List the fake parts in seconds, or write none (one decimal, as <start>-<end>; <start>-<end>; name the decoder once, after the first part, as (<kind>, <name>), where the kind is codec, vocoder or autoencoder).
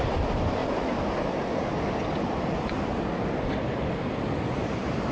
none